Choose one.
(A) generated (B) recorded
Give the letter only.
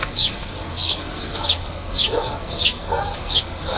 A